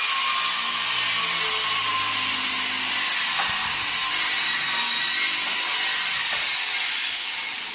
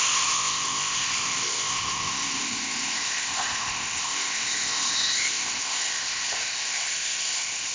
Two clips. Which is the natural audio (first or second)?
first